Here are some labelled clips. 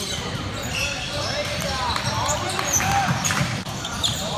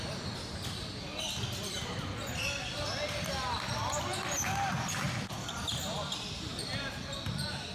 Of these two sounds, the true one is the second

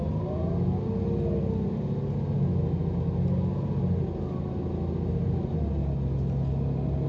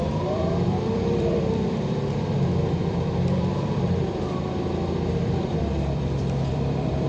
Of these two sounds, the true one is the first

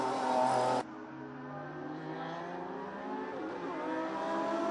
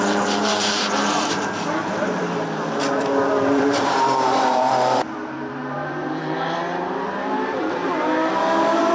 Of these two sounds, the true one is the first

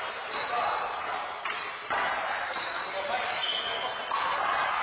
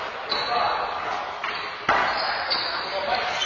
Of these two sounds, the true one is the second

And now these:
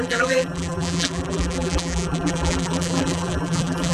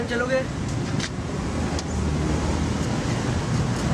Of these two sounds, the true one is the second